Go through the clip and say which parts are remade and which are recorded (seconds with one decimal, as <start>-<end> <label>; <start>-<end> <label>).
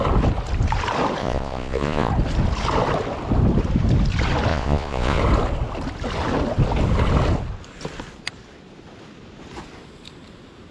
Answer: 0.0-1.2 recorded; 1.2-2.1 remade; 2.1-4.5 recorded; 4.5-5.2 remade; 5.2-10.7 recorded